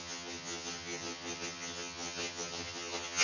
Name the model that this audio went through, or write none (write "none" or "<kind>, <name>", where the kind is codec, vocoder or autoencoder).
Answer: vocoder, HiFi-GAN